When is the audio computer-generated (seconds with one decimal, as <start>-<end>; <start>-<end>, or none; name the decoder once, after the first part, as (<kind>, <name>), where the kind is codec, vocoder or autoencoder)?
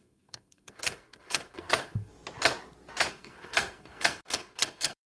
0.0-2.1 (codec, SNAC); 3.1-5.1